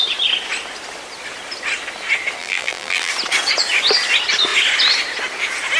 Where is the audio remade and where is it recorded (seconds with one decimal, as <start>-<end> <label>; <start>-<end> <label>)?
0.0-2.4 recorded; 2.4-3.1 remade; 3.1-5.8 recorded